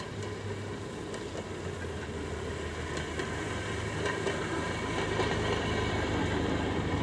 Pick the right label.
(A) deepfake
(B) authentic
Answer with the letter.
B